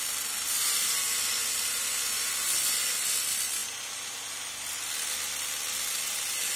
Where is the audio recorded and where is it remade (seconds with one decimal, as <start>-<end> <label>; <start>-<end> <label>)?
0.0-6.6 recorded